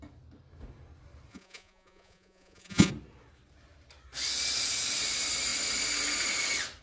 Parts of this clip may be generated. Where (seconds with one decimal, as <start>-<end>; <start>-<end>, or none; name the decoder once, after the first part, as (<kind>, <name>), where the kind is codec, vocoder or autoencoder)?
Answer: 1.3-2.9 (vocoder, Vocos)